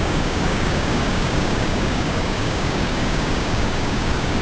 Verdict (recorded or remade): remade